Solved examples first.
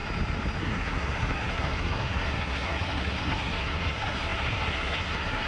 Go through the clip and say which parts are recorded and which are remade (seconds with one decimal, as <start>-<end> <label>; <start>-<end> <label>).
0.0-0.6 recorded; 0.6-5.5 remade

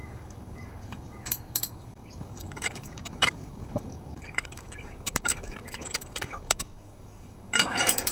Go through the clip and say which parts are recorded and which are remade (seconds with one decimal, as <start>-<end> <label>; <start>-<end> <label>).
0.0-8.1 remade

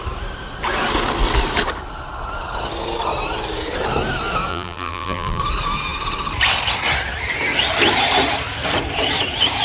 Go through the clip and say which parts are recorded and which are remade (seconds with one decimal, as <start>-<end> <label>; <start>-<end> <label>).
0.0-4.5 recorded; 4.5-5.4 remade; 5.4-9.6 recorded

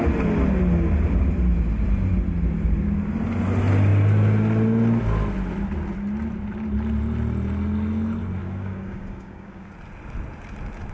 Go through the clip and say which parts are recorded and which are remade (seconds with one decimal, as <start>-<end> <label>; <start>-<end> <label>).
0.0-8.4 recorded; 8.4-9.7 remade; 9.7-10.9 recorded

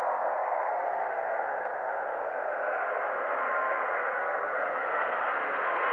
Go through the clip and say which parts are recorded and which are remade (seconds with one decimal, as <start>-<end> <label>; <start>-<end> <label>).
0.0-5.9 remade

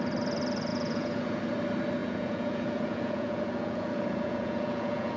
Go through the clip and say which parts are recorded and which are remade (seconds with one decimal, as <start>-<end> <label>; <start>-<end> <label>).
0.0-0.7 recorded; 0.7-1.4 remade; 1.4-2.0 recorded; 2.0-5.2 remade